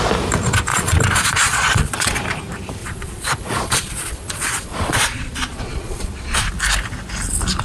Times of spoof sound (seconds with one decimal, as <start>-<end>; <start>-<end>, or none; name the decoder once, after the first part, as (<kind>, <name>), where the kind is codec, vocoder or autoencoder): 0.7-2.2 (vocoder, Vocos); 2.8-6.5